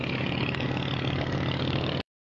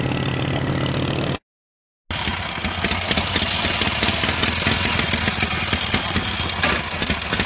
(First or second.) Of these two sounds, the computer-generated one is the first